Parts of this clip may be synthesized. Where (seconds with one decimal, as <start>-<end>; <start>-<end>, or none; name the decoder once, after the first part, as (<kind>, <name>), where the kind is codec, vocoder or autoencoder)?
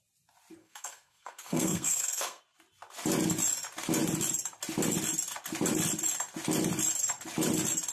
0.6-2.4 (codec, SNAC)